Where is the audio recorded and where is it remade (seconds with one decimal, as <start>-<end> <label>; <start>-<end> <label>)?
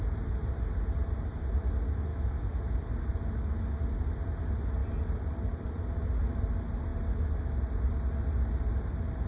0.0-2.1 recorded; 2.1-2.7 remade; 2.7-9.3 recorded